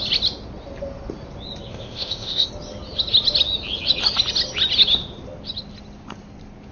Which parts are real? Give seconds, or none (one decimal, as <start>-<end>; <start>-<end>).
0.0-1.7; 2.5-6.7